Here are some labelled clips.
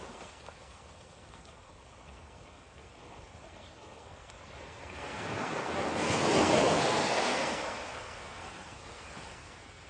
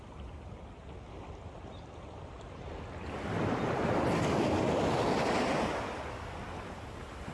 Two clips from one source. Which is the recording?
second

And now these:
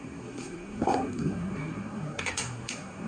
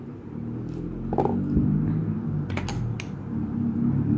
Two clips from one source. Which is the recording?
second